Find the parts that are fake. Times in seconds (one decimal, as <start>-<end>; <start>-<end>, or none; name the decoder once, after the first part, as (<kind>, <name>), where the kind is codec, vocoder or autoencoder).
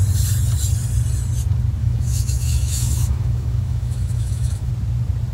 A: 1.8-4.7 (autoencoder, DAC-VAE)